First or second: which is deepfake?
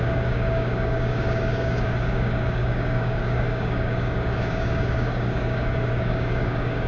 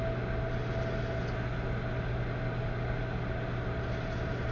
first